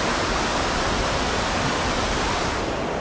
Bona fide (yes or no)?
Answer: yes